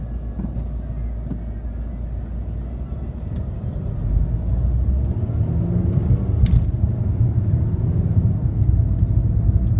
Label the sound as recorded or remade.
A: recorded